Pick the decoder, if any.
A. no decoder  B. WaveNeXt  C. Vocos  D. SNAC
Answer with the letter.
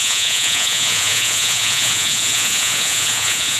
C